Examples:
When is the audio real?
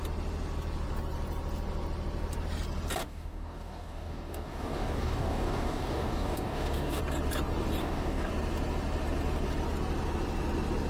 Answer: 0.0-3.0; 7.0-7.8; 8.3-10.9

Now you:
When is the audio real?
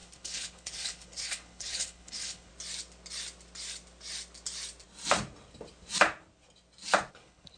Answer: 2.5-7.1